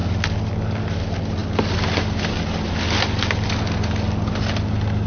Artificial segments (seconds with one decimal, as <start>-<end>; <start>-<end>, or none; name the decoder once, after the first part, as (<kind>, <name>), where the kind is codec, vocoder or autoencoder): none